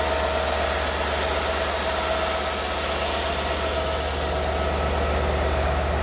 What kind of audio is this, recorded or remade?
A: recorded